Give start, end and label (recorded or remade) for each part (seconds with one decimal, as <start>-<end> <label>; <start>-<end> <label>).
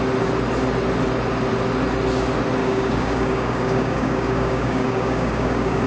0.0-2.6 recorded; 2.6-5.9 remade